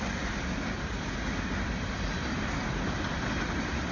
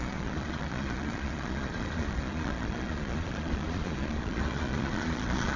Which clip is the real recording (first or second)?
first